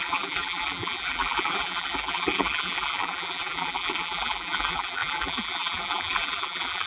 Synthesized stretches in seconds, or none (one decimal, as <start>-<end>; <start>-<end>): 0.0-6.9